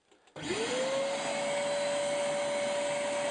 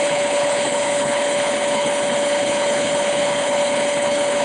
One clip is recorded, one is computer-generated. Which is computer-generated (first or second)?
second